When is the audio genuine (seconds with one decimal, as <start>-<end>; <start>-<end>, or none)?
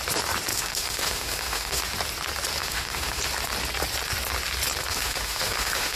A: 0.0-0.5; 1.8-2.6; 3.2-4.9